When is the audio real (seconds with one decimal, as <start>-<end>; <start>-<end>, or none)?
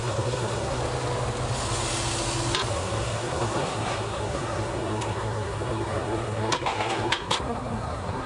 0.8-2.7